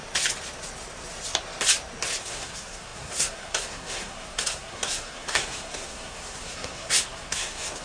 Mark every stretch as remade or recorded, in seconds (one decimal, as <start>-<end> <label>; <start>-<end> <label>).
0.0-2.2 recorded; 2.2-7.8 remade